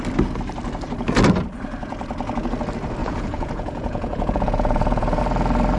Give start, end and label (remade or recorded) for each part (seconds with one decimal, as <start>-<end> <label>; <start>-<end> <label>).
0.0-3.0 recorded; 3.0-5.2 remade; 5.2-5.8 recorded